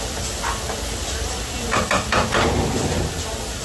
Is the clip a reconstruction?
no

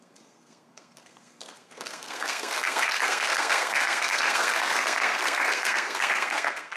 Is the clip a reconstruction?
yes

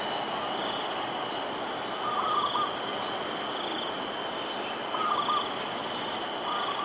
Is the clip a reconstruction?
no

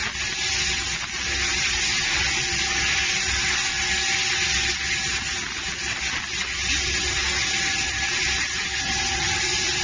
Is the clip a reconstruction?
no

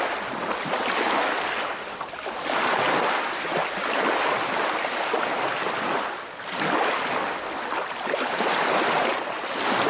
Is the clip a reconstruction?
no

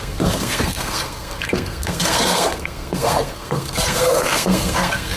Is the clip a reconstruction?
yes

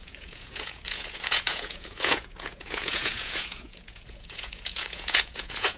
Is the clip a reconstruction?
yes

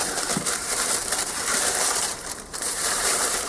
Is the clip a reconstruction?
yes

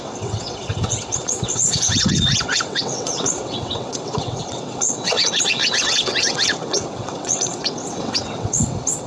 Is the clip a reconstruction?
yes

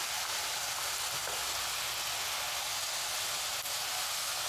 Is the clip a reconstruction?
no